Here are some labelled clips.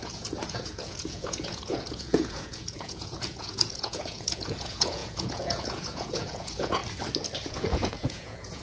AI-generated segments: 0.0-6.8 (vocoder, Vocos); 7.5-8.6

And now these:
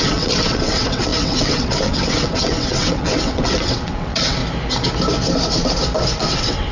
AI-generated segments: 0.0-4.4 (vocoder, WaveNeXt); 6.3-6.7

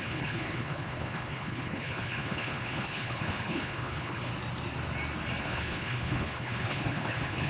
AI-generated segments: 0.0-4.3 (codec, HILCodec); 5.4-7.5

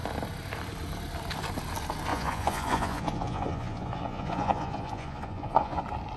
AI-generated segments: 2.1-5.8 (vocoder, Vocos)

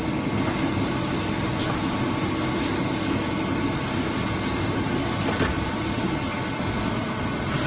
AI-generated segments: 4.5-7.7 (vocoder, BigVGAN v2)

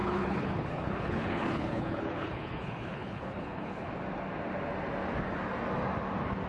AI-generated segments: 0.0-3.9 (codec, HILCodec)

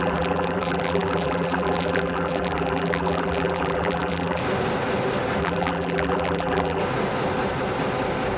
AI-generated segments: 0.0-4.4 (vocoder, BigVGAN v2); 5.4-6.8

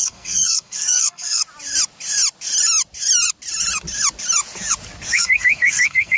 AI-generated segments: 0.0-1.4 (codec, SNAC); 5.1-6.2